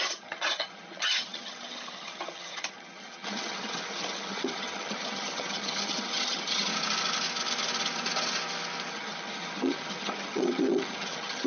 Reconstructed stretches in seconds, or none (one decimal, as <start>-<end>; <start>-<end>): 0.0-6.7; 8.9-11.5